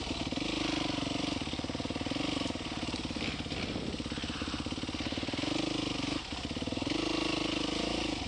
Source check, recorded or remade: recorded